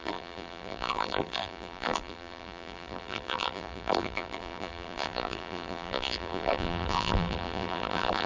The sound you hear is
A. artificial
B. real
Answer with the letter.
A